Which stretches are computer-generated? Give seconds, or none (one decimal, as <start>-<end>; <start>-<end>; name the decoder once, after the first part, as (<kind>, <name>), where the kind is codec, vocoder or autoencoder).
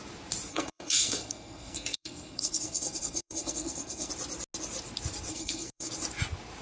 0.5-4.1 (codec, SNAC); 5.3-5.9